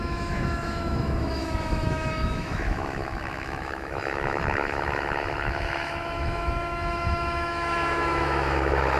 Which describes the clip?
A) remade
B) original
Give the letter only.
A